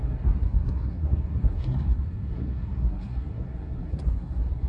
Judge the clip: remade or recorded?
remade